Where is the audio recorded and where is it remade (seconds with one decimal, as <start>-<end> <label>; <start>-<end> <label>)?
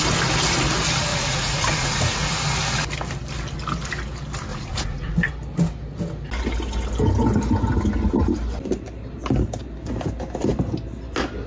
0.0-1.1 recorded; 1.1-2.3 remade; 2.3-4.5 recorded; 4.5-5.3 remade; 5.3-11.5 recorded